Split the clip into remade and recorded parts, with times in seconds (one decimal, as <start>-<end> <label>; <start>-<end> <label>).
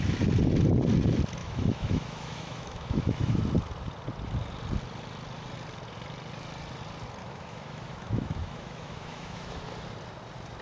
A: 0.0-1.4 recorded; 1.4-3.4 remade; 3.4-7.2 recorded; 7.2-9.7 remade; 9.7-10.6 recorded